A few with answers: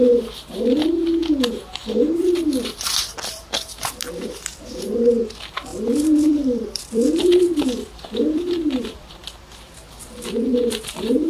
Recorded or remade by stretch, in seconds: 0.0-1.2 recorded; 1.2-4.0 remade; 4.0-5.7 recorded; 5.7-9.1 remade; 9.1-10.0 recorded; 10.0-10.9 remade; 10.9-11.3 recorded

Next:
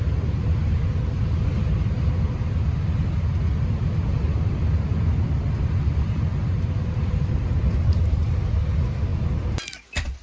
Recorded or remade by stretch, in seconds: 0.0-10.2 recorded

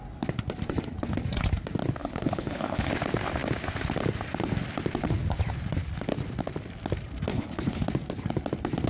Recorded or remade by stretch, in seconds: 0.0-2.0 recorded; 2.0-2.9 remade; 2.9-7.3 recorded; 7.3-7.8 remade; 7.8-8.9 recorded

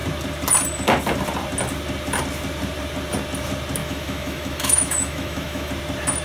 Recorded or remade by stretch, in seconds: 0.0-3.8 recorded; 3.8-5.7 remade; 5.7-6.2 recorded

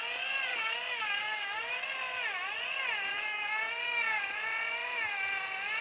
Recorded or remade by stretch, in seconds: 0.0-0.5 recorded; 0.5-1.7 remade; 1.7-3.1 recorded; 3.1-4.2 remade; 4.2-5.8 recorded

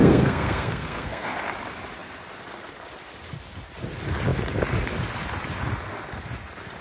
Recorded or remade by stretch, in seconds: 0.0-1.3 remade; 1.3-6.8 recorded

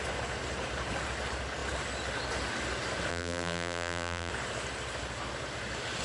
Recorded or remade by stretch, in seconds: 0.0-3.1 recorded; 3.1-4.3 remade; 4.3-6.0 recorded